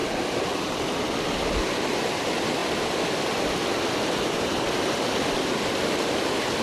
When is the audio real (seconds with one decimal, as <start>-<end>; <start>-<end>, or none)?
0.0-6.6